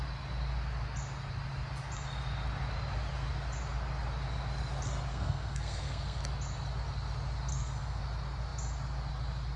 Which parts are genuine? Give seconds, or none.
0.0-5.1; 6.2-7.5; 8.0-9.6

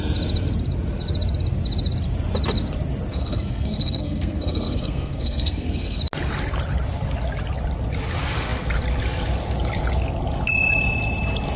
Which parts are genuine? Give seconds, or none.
0.0-3.1; 6.0-11.6

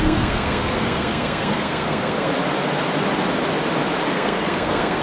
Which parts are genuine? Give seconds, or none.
2.3-4.1